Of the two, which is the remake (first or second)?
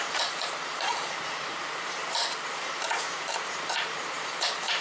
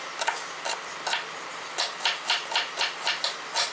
first